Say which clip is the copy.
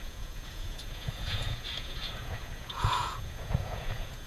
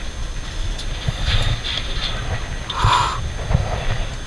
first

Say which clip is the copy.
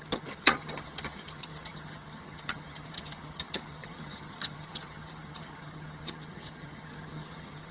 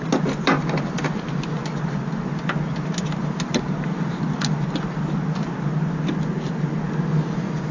first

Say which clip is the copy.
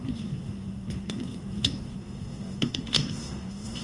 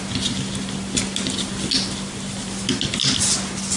first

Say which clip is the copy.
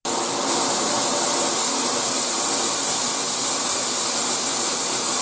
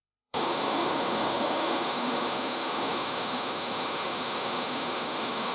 second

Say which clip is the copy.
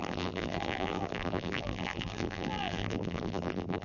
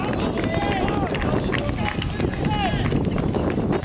first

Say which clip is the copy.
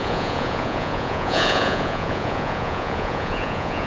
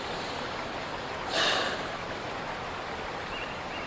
first